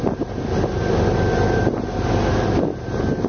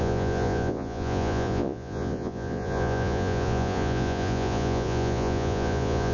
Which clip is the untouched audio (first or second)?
first